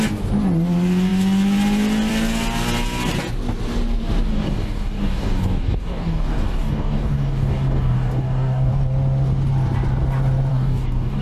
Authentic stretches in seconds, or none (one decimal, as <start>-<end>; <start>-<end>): 0.0-4.3; 8.7-10.5